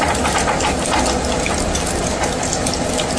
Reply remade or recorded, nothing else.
recorded